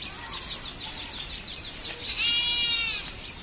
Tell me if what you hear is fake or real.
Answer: real